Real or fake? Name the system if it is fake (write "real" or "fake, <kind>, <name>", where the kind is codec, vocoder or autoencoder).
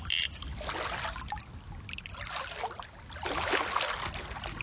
real